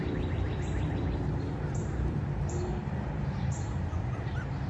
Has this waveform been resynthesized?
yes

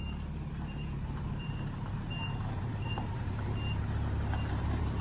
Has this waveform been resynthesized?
yes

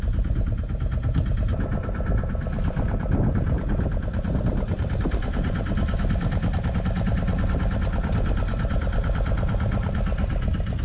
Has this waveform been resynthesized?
no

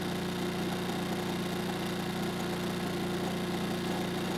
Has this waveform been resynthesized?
no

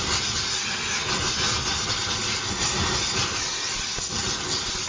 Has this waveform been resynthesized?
no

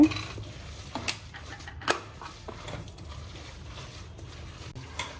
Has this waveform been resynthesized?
no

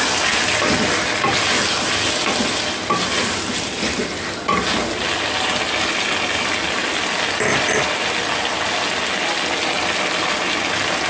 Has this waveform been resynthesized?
no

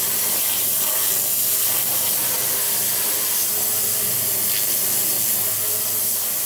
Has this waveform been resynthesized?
no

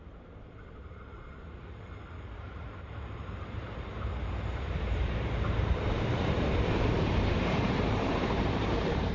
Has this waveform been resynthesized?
yes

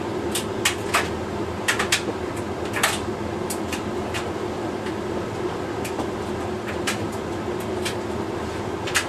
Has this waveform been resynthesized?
no